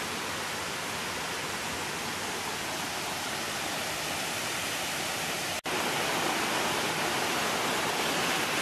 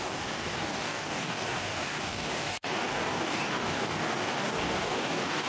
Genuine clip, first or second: first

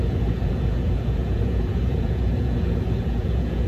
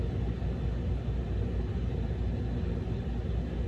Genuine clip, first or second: second